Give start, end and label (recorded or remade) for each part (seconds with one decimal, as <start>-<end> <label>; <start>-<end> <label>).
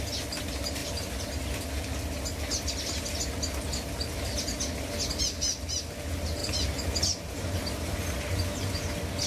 0.0-9.3 recorded